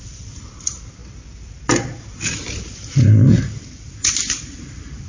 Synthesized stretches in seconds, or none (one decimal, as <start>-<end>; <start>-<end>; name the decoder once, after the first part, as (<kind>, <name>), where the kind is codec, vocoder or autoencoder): none